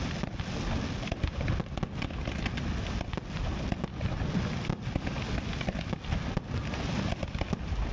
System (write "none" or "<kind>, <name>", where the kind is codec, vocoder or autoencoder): none